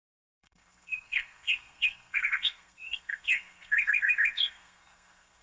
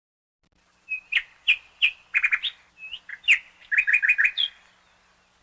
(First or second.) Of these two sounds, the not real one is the first